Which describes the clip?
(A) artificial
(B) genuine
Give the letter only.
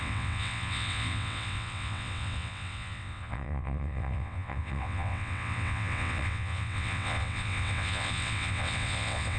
A